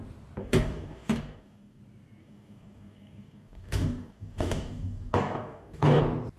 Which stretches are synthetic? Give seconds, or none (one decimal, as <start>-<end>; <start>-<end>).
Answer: 0.4-1.8; 2.2-6.0